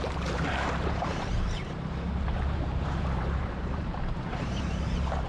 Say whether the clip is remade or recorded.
remade